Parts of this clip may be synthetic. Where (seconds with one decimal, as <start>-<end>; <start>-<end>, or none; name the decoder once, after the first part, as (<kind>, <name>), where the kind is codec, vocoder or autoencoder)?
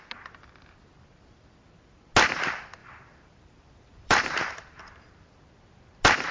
2.8-5.4 (vocoder, BigVGAN v2)